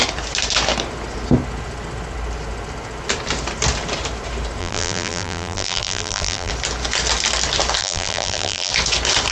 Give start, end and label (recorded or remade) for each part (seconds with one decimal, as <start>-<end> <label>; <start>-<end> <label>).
0.0-4.6 recorded; 4.6-6.5 remade; 6.5-7.8 recorded; 7.8-8.7 remade; 8.7-9.3 recorded